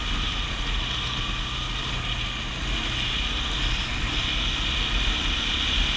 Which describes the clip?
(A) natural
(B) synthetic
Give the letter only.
A